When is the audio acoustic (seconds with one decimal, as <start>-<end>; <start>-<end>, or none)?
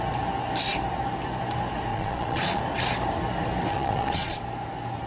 0.0-1.9; 2.6-3.7; 4.4-5.1